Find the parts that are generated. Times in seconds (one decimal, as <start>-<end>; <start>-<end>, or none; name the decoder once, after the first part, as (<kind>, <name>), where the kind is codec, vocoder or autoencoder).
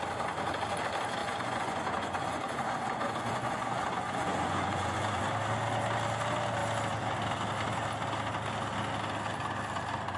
1.2-5.2 (vocoder, Vocos)